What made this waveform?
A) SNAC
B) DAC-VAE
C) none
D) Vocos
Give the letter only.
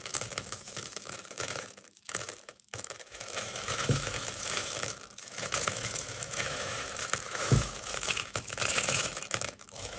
B